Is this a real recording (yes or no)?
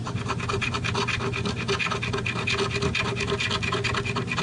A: yes